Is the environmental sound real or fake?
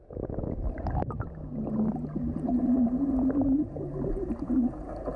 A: real